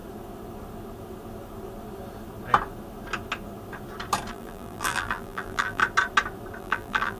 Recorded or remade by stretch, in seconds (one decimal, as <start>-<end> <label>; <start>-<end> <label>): 0.0-4.3 recorded; 4.3-5.8 remade; 5.8-6.6 recorded; 6.6-7.2 remade